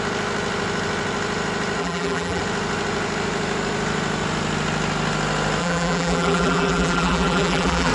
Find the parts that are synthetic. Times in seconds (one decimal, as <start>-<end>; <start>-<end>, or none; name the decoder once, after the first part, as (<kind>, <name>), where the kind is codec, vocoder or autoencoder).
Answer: 1.8-2.4 (vocoder, BigVGAN v2); 5.6-7.9